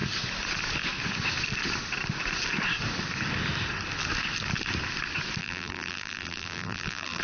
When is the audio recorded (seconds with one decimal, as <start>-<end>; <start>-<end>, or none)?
0.0-5.4